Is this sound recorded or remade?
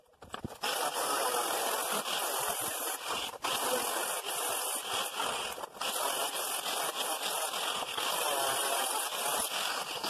remade